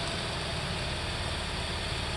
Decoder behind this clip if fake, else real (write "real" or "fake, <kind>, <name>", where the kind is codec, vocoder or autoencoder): real